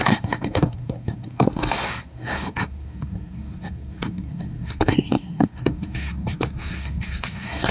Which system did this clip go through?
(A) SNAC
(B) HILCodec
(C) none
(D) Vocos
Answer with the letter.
A